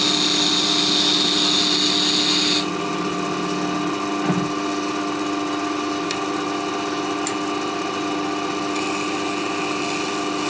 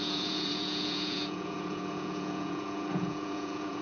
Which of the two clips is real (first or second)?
first